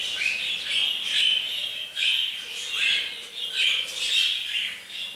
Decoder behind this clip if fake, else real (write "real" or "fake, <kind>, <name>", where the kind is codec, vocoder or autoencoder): real